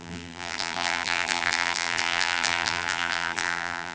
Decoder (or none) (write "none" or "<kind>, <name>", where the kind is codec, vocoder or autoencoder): vocoder, BigVGAN v2